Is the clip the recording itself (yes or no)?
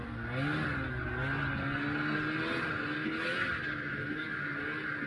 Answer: yes